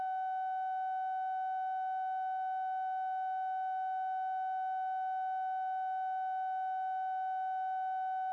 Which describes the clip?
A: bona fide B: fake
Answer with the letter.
A